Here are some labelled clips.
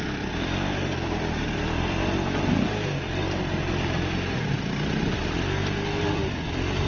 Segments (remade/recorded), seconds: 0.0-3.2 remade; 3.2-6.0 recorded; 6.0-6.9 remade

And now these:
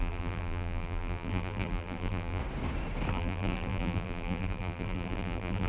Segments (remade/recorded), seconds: 0.0-2.4 remade; 2.4-3.1 recorded; 3.1-5.7 remade

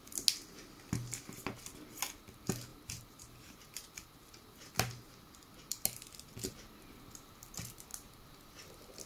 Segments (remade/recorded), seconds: 0.0-2.7 recorded; 2.7-4.7 remade; 4.7-9.1 recorded

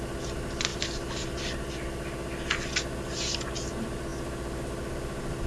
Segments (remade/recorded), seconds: 0.0-0.7 recorded; 0.7-1.4 remade; 1.4-5.5 recorded

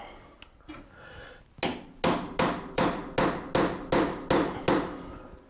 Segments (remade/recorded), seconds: 0.0-2.6 recorded; 2.6-3.0 remade; 3.0-4.7 recorded; 4.7-5.5 remade